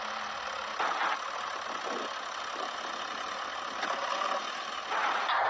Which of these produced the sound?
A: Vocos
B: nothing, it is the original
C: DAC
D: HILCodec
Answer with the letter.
B